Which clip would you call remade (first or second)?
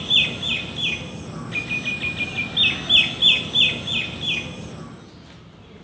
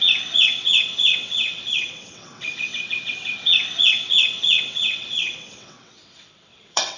second